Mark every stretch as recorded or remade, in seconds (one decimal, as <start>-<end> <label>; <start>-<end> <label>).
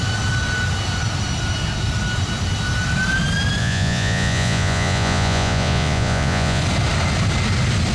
0.0-3.6 recorded; 3.6-6.6 remade; 6.6-7.9 recorded